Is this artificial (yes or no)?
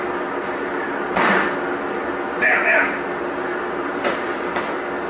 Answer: no